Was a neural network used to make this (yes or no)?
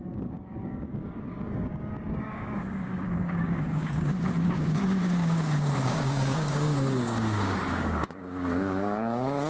yes